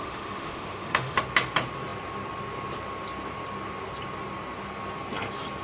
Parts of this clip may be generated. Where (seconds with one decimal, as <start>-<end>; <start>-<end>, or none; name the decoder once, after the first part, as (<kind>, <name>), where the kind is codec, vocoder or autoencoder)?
0.0-1.2 (autoencoder, DAC-VAE)